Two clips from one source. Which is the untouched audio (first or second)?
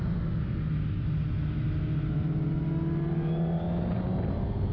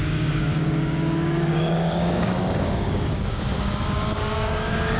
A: first